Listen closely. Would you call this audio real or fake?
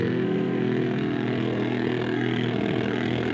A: fake